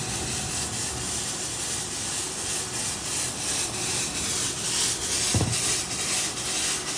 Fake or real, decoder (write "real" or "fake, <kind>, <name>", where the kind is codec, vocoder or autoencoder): real